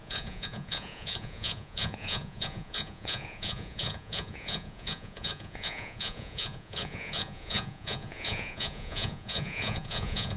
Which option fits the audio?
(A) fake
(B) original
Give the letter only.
A